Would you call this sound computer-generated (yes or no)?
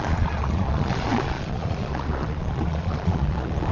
yes